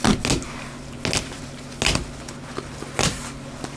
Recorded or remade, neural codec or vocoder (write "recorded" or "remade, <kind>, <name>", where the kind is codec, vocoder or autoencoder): recorded